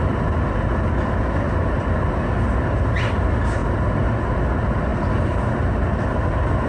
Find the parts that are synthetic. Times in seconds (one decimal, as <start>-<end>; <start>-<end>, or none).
3.6-4.2